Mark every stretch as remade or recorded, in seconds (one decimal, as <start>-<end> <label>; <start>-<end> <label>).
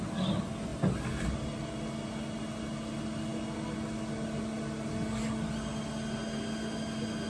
0.0-7.3 recorded